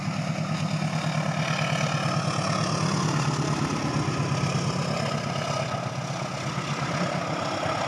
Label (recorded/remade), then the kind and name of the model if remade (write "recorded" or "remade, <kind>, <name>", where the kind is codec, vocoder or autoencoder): recorded